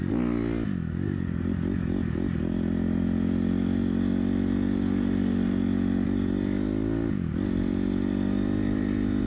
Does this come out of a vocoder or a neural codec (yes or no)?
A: no